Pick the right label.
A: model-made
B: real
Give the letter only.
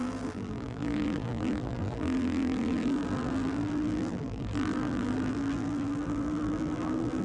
A